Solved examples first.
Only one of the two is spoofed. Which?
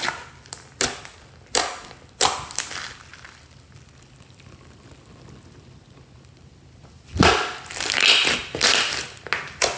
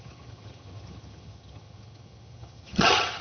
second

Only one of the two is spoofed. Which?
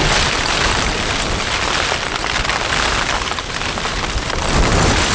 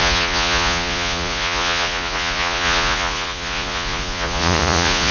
second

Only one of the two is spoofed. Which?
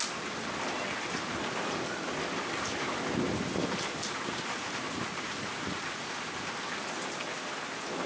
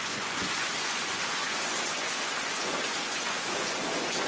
second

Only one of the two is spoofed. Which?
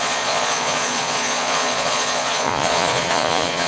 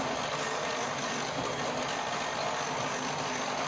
first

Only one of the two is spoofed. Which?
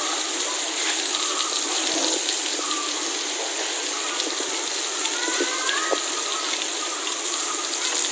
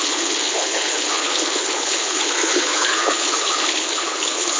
second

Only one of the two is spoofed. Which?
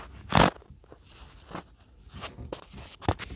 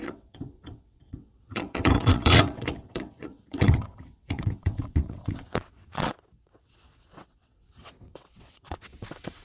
second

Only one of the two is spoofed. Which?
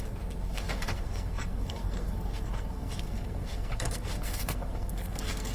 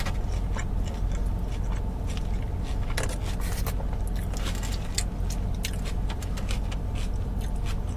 first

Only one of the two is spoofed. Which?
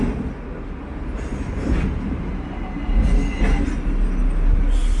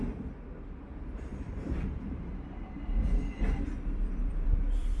second